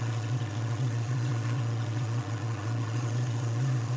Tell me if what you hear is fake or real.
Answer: fake